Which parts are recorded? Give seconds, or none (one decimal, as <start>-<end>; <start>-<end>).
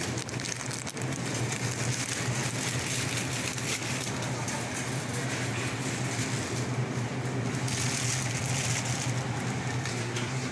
0.0-9.9